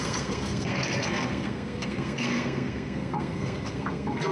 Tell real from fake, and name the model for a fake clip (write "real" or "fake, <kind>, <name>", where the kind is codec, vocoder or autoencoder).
fake, codec, SNAC